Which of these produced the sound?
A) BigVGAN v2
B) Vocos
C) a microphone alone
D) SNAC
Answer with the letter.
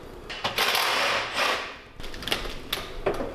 C